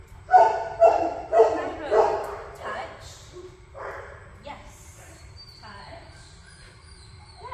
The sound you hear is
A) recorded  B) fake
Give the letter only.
B